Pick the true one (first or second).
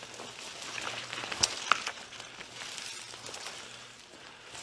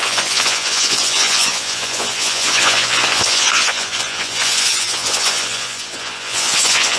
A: first